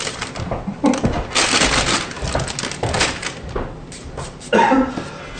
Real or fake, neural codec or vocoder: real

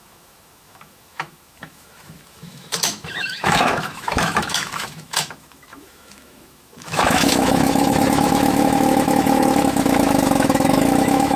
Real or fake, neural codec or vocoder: fake, autoencoder, DAC-VAE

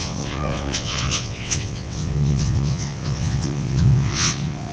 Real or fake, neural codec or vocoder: fake, vocoder, WaveNeXt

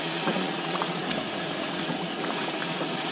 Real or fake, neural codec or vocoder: fake, vocoder, Vocos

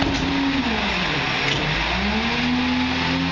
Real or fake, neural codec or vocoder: real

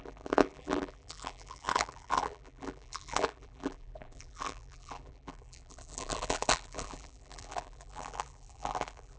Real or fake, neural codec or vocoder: fake, vocoder, BigVGAN v2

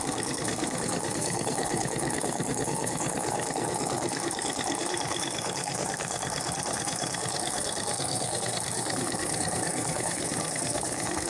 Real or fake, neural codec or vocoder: fake, codec, SNAC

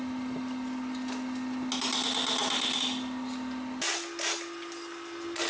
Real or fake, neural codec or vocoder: real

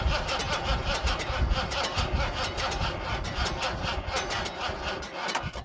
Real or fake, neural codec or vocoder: fake, vocoder, BigVGAN v2